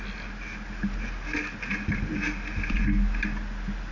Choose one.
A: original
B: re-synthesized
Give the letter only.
A